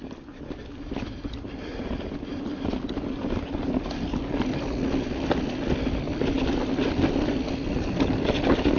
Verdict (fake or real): real